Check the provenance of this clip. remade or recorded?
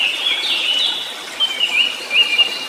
recorded